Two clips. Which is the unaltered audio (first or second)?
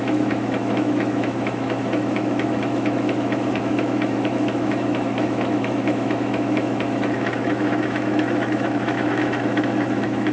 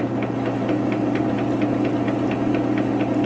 second